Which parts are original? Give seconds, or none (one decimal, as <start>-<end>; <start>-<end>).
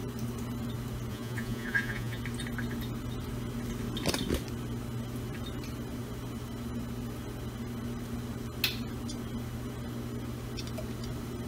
0.0-1.1; 2.2-11.5